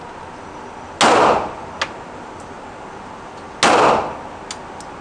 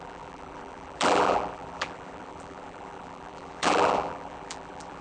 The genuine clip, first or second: first